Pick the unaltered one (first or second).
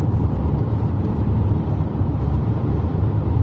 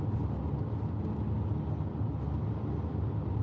second